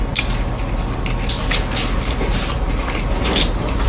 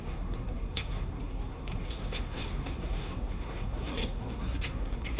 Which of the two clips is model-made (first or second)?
second